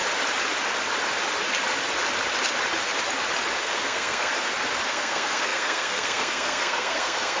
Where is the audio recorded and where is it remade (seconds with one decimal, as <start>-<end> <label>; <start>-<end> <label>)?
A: 0.0-3.6 recorded; 3.6-4.3 remade; 4.3-4.9 recorded; 4.9-7.4 remade